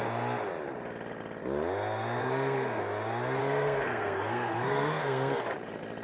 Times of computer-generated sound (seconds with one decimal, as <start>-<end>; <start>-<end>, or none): 2.2-2.8; 3.4-5.4